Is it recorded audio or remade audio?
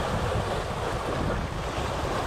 recorded